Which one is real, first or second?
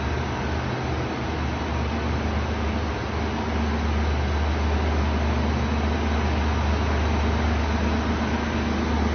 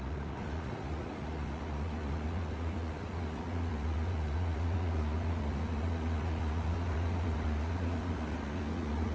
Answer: first